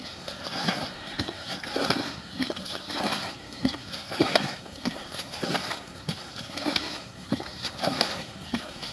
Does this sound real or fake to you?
fake